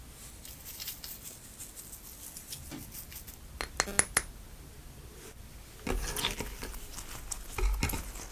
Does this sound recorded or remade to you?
recorded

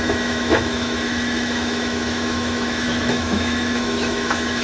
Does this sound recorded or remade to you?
remade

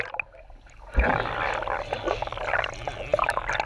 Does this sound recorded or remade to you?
recorded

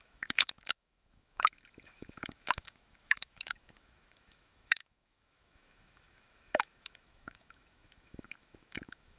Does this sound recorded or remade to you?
remade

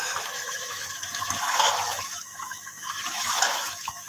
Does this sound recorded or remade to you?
remade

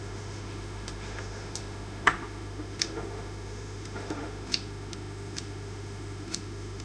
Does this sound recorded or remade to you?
remade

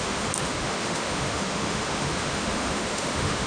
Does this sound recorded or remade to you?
remade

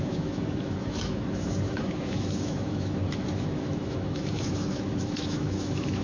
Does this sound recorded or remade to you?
remade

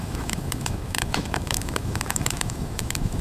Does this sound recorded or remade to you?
remade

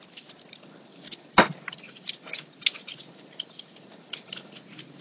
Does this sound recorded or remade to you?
recorded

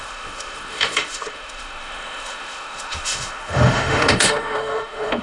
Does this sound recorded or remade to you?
remade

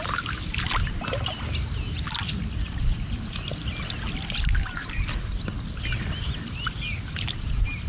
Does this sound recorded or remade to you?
recorded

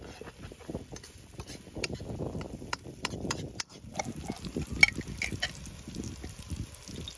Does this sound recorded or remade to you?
recorded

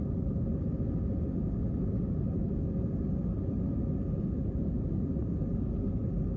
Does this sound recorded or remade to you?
recorded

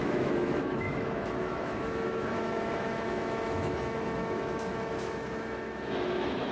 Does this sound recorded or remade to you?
remade